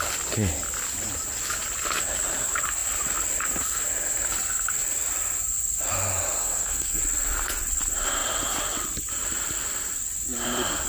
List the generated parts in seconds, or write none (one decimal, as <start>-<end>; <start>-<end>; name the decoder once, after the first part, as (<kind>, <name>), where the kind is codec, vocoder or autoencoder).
6.4-7.0 (codec, SNAC)